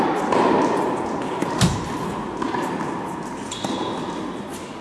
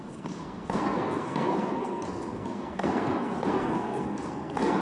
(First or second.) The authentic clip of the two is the first